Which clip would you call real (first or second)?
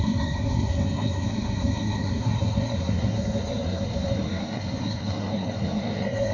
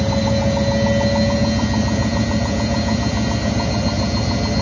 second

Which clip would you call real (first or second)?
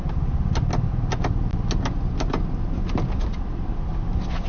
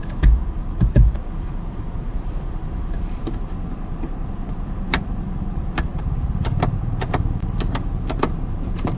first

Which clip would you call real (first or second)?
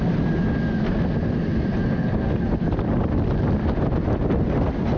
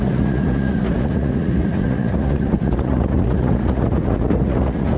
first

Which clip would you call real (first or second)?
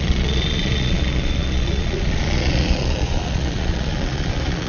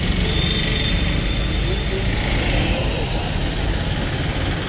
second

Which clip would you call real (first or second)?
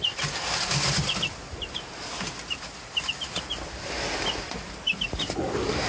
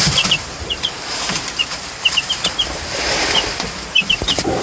first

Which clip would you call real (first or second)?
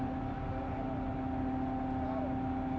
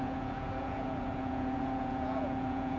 first